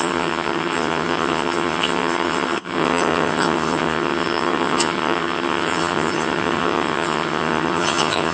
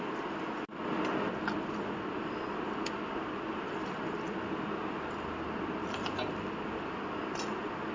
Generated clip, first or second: first